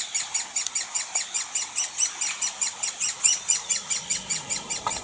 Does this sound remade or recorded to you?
recorded